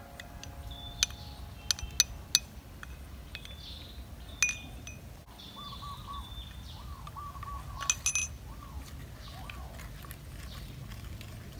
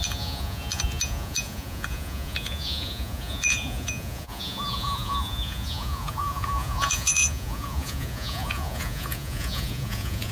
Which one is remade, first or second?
second